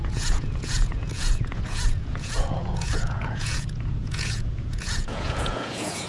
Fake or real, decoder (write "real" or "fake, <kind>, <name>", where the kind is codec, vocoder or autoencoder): fake, vocoder, Vocos